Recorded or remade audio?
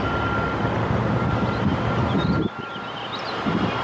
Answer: recorded